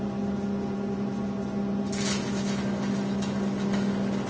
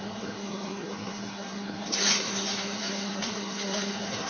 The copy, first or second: second